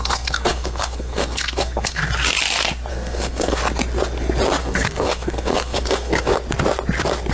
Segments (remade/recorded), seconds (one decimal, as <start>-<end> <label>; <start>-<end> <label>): 0.0-2.0 remade; 2.0-2.9 recorded; 2.9-3.6 remade; 3.6-4.6 recorded; 4.6-6.3 remade; 6.3-7.3 recorded